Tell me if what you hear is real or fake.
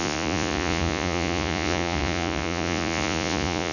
fake